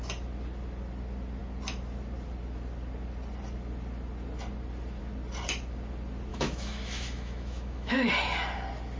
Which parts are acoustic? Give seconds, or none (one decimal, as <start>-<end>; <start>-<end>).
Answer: 0.0-6.3; 8.1-9.0